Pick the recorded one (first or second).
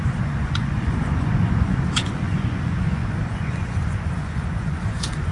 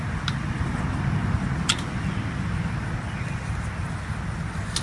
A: second